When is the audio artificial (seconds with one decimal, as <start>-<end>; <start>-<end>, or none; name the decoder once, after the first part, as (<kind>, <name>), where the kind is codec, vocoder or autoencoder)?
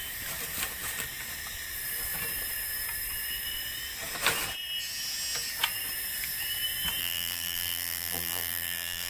7.0-9.1 (vocoder, BigVGAN v2)